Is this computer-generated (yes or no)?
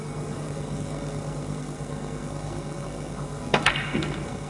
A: yes